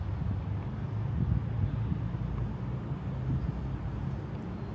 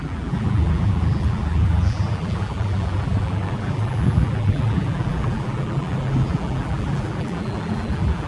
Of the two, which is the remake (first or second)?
second